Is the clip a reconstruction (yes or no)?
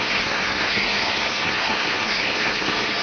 yes